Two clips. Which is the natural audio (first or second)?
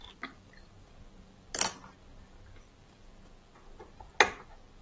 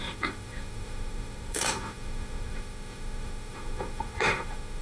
first